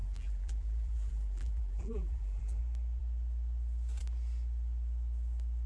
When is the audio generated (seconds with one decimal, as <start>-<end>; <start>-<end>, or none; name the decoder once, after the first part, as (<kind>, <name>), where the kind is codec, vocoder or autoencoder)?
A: 0.0-2.6 (vocoder, BigVGAN v2)